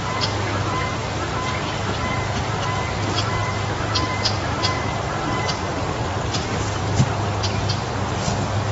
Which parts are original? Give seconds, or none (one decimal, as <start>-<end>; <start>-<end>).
0.0-3.4; 6.8-8.7